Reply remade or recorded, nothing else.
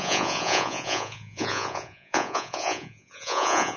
remade